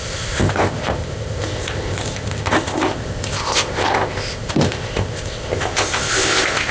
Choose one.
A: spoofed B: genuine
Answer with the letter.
A